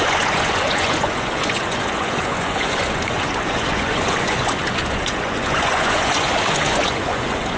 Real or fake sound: fake